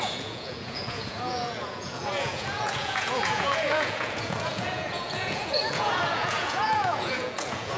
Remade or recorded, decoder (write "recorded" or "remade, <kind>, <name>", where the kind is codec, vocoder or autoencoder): remade, vocoder, Vocos